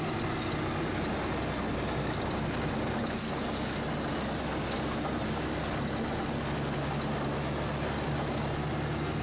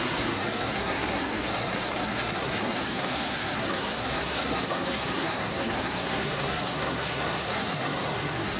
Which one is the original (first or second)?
first